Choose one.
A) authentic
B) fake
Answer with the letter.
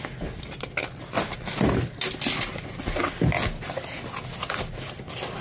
A